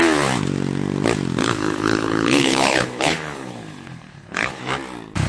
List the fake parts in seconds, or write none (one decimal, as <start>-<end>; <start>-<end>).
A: 1.4-4.6